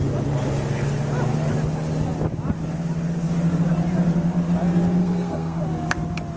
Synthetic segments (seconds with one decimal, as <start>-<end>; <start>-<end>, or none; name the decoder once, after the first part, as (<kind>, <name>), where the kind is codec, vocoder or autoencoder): 5.0-5.6 (codec, SNAC)